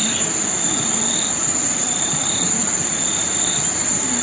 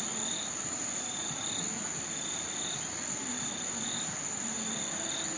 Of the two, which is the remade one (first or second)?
first